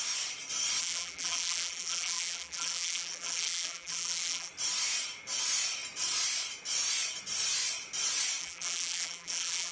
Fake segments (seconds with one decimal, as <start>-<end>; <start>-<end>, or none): 0.8-4.5; 8.4-9.7